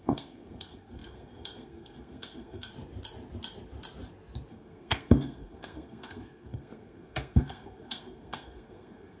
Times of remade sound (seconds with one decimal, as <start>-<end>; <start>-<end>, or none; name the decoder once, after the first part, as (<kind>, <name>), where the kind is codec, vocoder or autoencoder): 0.0-2.7 (codec, SNAC); 4.5-9.2

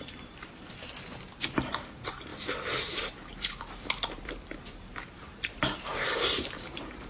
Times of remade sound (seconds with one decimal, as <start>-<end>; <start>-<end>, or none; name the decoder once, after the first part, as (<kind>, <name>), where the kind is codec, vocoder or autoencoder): 0.0-7.1 (vocoder, BigVGAN v2)

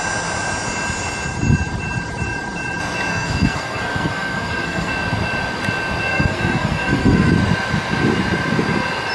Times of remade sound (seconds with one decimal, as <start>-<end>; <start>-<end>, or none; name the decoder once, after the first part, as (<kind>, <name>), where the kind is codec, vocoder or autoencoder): 3.1-4.9 (codec, SNAC); 6.1-7.3

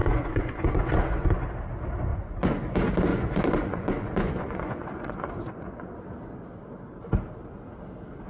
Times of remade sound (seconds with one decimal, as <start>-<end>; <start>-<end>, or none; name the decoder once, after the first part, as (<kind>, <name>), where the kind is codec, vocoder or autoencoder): 0.0-1.3 (vocoder, Vocos); 2.1-2.6; 3.1-6.0